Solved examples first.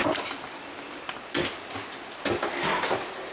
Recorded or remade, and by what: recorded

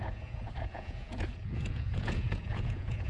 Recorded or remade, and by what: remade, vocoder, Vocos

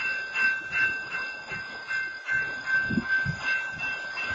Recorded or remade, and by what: recorded